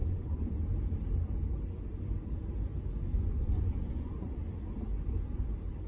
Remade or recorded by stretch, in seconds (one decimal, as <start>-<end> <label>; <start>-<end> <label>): 0.0-0.6 remade; 0.6-3.1 recorded; 3.1-4.3 remade; 4.3-5.9 recorded